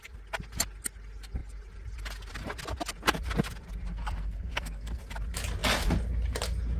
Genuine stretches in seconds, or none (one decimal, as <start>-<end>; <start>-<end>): 0.0-3.9; 5.0-6.8

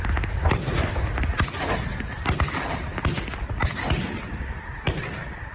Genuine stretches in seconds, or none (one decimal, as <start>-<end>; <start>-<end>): 0.0-5.5